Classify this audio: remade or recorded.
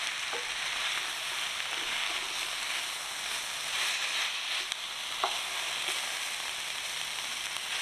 remade